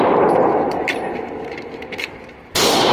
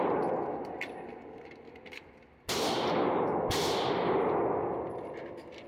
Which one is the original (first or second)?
second